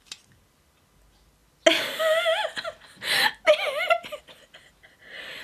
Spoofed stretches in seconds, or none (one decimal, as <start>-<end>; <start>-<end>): none